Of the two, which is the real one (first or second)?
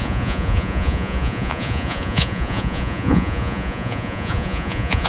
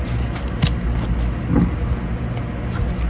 second